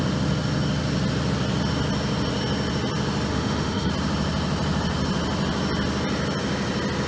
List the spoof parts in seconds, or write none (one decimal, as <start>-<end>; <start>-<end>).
3.3-3.9